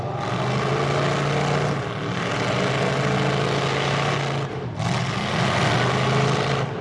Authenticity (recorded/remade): recorded